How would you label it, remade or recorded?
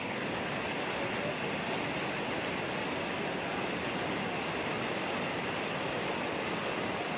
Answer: recorded